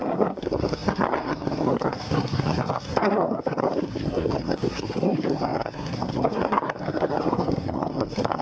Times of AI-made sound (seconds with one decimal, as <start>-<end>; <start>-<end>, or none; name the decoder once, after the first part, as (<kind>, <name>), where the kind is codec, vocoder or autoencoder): 0.0-8.4 (codec, SNAC)